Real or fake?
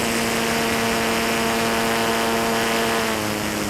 real